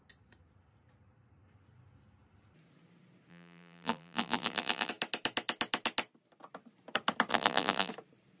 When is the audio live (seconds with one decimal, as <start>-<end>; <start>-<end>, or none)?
0.0-3.3; 4.9-7.3; 7.9-8.4